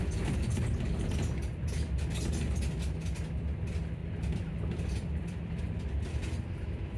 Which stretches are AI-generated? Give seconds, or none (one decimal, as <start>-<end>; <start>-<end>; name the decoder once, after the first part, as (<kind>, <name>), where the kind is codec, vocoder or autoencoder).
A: 4.0-5.6 (vocoder, BigVGAN v2)